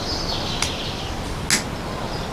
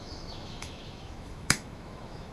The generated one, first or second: second